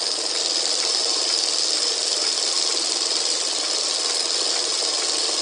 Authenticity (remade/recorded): recorded